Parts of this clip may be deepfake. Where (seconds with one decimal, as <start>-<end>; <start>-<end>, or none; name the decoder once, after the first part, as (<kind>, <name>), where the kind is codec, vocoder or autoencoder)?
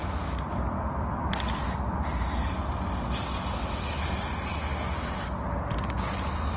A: none